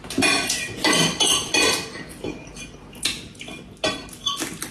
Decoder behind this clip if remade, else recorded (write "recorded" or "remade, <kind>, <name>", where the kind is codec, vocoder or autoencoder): recorded